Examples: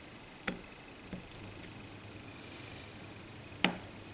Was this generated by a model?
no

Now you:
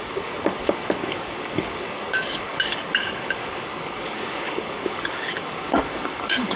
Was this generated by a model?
yes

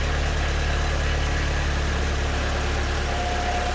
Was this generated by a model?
no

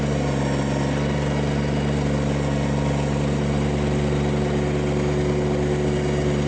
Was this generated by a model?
no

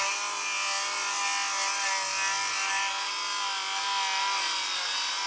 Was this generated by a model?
no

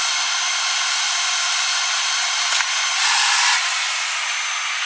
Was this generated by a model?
no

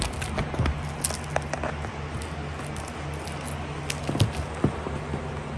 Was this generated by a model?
no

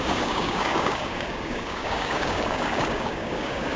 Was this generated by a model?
yes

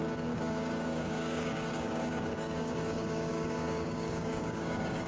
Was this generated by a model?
yes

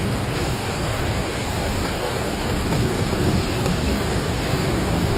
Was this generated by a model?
yes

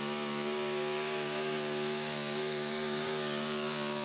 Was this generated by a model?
yes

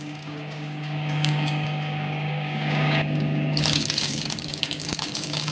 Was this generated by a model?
yes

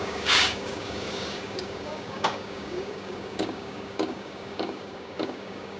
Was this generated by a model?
yes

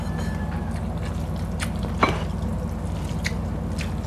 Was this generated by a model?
no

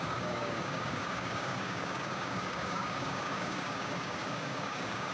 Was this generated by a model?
yes